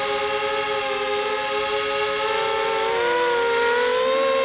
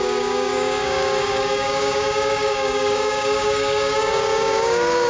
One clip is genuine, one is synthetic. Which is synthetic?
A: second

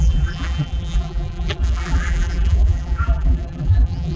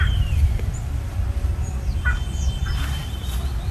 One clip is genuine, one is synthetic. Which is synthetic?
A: first